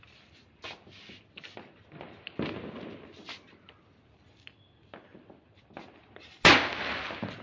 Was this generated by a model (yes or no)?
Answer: no